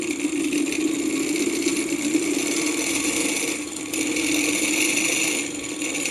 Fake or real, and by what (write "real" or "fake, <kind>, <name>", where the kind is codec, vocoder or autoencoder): real